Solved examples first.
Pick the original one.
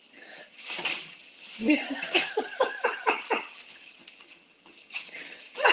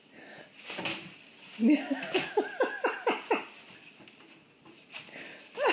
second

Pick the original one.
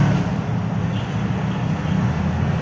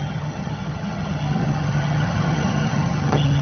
first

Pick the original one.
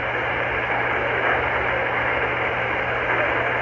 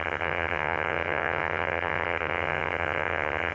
first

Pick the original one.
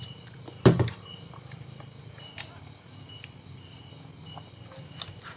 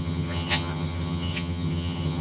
first